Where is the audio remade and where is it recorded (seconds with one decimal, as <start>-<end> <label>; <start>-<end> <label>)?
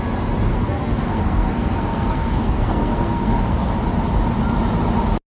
0.0-0.5 recorded; 0.5-3.7 remade; 3.7-5.3 recorded